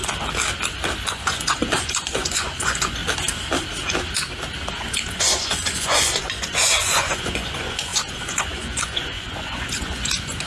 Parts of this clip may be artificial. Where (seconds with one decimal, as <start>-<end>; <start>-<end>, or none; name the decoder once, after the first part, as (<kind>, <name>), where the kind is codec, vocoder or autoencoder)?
1.1-3.0 (vocoder, Vocos); 4.7-10.5